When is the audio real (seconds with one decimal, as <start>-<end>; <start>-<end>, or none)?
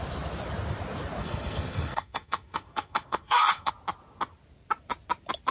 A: 0.0-1.2; 3.7-5.5